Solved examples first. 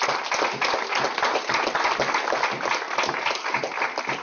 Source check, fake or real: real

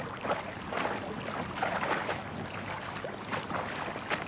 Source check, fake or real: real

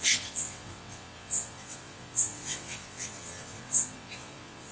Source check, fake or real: fake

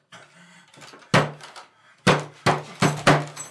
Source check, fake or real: real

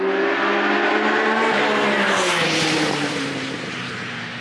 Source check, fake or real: real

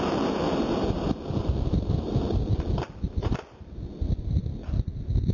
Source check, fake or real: real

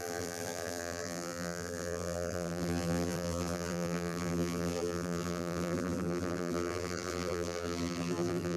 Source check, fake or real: fake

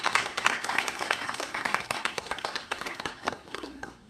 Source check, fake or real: fake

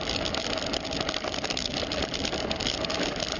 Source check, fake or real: real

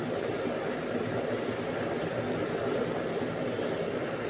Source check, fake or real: real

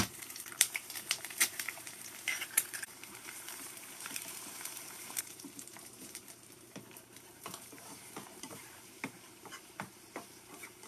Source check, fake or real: fake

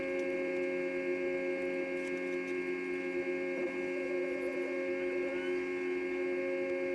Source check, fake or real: real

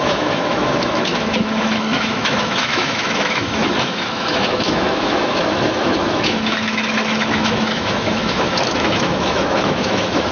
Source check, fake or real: fake